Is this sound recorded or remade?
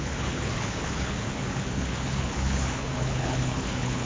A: remade